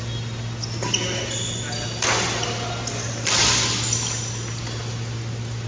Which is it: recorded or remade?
recorded